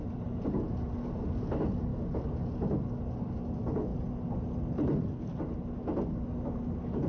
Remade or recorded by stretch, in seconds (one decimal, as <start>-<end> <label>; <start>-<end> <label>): 0.0-7.1 recorded